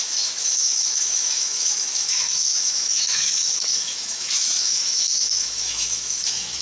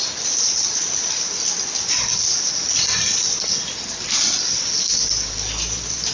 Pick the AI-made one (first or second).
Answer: first